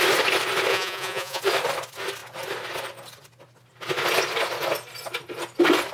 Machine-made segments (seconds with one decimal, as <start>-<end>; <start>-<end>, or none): 0.7-1.4